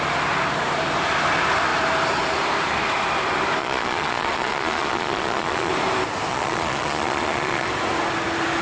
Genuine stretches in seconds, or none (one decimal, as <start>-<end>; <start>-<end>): 0.0-3.6; 5.7-6.3; 7.7-8.6